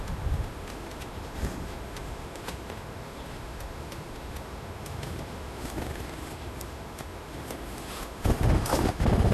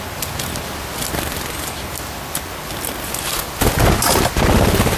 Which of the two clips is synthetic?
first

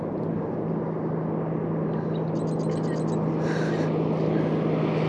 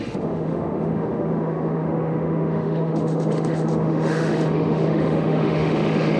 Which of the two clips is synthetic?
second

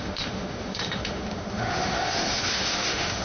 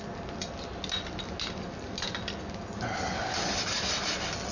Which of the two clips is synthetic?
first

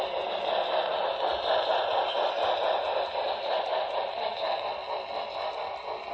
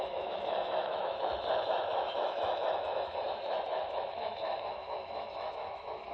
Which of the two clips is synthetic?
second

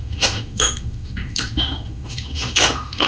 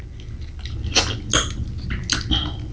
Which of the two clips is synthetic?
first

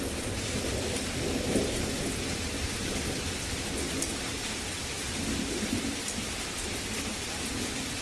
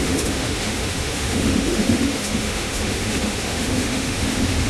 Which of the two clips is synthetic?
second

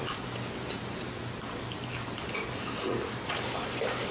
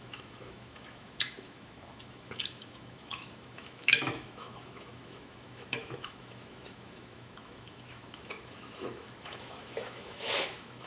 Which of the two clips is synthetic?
second